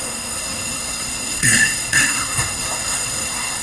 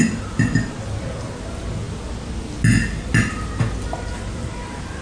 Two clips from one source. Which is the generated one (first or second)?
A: first